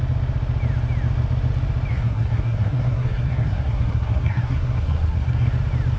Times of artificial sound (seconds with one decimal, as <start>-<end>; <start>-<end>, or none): 1.9-5.5